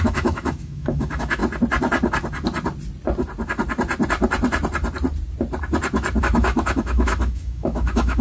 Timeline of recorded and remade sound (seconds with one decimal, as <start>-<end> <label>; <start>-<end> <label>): 0.0-1.4 remade; 1.4-6.2 recorded; 6.2-8.2 remade